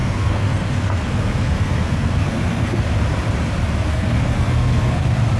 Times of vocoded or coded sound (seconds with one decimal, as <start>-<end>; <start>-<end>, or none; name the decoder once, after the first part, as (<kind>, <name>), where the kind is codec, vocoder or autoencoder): 0.0-2.8 (codec, SNAC); 3.9-5.0